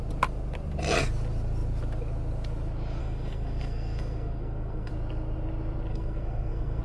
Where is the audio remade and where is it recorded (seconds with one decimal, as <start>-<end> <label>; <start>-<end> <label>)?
0.0-3.0 recorded; 3.0-4.9 remade; 4.9-5.9 recorded; 5.9-6.8 remade